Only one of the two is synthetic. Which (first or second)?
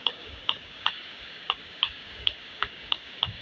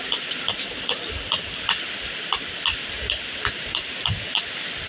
first